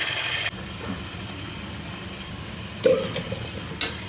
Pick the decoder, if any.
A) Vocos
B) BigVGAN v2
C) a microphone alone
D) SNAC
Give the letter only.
C